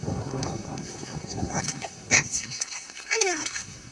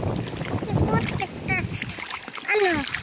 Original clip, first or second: second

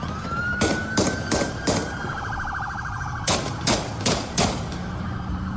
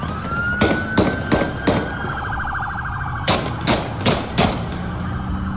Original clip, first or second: second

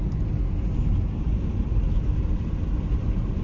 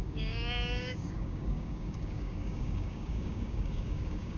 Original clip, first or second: first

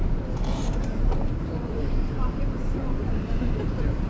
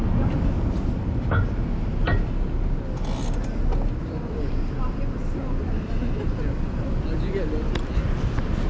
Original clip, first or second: second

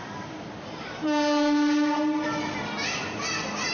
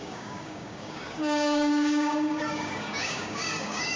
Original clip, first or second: first